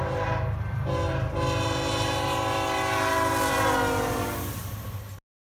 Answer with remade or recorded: recorded